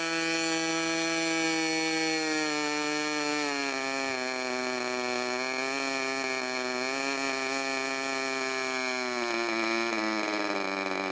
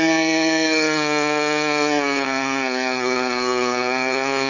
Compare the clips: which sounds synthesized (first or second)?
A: second